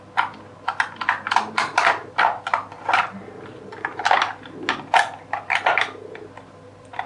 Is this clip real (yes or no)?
yes